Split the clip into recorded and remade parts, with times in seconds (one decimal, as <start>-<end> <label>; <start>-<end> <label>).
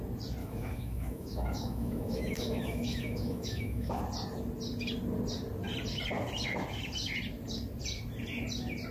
0.0-0.4 recorded; 0.4-4.0 remade; 4.0-8.9 recorded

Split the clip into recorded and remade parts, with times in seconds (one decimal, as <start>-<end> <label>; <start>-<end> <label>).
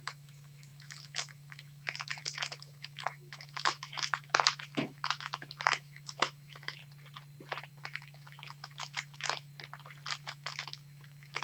0.0-6.8 remade; 6.8-7.7 recorded; 7.7-9.5 remade; 9.5-10.2 recorded; 10.2-11.4 remade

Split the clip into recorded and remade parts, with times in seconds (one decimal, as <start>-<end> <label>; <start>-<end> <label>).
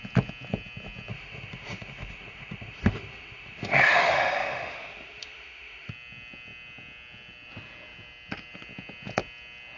0.0-1.1 recorded; 1.1-5.9 remade; 5.9-9.8 recorded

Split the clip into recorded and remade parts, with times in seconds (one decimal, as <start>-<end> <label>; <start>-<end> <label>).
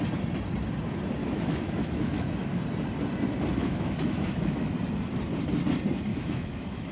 0.0-1.2 recorded; 1.2-2.6 remade; 2.6-3.6 recorded; 3.6-4.7 remade; 4.7-6.1 recorded; 6.1-6.9 remade